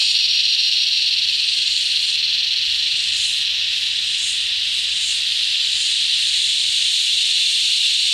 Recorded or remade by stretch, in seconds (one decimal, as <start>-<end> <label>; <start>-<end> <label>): 0.0-2.0 remade; 2.0-2.9 recorded; 2.9-3.4 remade; 3.4-5.1 recorded; 5.1-6.4 remade; 6.4-8.1 recorded